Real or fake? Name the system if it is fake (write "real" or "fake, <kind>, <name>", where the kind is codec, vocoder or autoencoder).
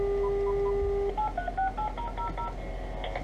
real